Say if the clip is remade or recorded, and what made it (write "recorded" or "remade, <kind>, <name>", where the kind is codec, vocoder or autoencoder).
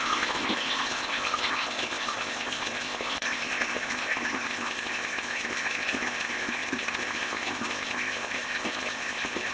remade, codec, ZipCodec